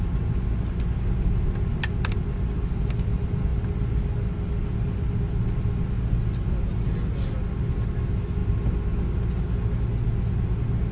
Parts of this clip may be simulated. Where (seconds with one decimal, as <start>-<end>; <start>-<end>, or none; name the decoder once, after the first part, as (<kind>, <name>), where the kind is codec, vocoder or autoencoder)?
none